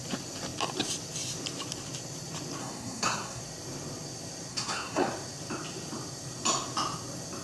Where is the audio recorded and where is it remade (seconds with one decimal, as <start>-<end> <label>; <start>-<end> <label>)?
0.0-2.6 recorded; 2.6-3.4 remade; 3.4-4.5 recorded; 4.5-5.1 remade; 5.1-7.4 recorded